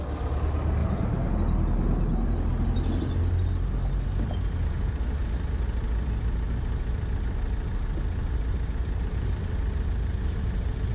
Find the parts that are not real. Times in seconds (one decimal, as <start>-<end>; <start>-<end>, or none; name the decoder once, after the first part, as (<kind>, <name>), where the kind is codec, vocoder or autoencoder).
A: 0.8-1.3 (vocoder, BigVGAN v2)

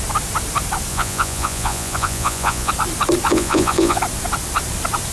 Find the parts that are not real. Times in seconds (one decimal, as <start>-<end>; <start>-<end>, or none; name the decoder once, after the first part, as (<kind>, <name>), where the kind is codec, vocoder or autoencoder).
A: 0.9-2.7 (vocoder, Vocos); 3.3-4.0

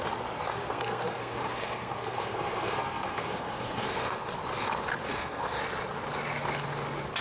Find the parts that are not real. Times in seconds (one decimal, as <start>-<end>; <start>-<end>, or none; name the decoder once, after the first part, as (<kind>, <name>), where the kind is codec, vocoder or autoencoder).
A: 0.5-4.3 (codec, SNAC); 5.1-5.6